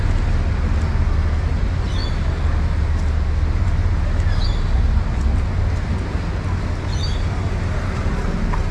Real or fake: real